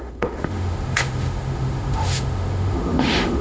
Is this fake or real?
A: fake